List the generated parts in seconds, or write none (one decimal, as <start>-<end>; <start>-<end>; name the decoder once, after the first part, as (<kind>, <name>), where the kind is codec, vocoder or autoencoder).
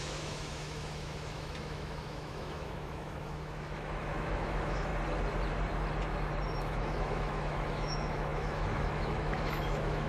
0.0-4.9 (autoencoder, DAC-VAE); 6.6-10.1